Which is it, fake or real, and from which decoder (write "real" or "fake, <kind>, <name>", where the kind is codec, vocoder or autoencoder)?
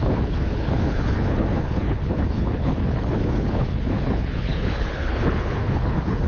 fake, codec, HILCodec